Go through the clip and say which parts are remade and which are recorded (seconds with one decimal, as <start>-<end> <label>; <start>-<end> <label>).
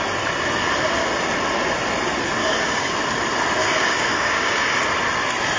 0.0-2.4 recorded; 2.4-2.9 remade; 2.9-3.6 recorded; 3.6-4.8 remade; 4.8-5.6 recorded